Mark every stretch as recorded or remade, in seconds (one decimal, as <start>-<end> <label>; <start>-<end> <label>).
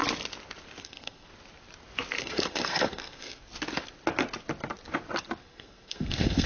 0.0-0.8 recorded; 0.8-1.3 remade; 1.3-2.2 recorded; 2.2-3.4 remade; 3.4-5.4 recorded; 5.4-6.5 remade